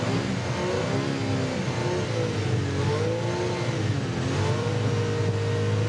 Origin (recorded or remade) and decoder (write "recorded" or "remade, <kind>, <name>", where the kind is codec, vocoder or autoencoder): recorded